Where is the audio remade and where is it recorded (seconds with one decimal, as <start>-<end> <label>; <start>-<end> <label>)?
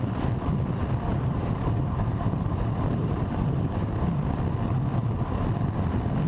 0.0-1.1 recorded; 1.1-4.1 remade; 4.1-6.3 recorded